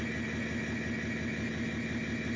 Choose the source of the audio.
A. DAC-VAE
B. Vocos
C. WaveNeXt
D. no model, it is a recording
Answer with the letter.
D